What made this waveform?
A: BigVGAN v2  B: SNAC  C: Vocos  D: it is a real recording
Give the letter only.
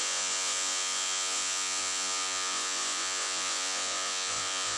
C